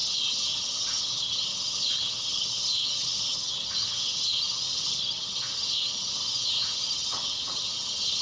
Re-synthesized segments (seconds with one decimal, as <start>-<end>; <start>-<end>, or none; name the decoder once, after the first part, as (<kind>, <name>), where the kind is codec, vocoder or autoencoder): 0.0-8.2 (vocoder, HiFi-GAN)